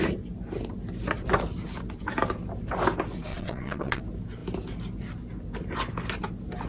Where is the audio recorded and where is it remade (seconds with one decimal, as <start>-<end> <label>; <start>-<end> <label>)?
0.0-3.3 recorded; 3.3-4.0 remade; 4.0-6.7 recorded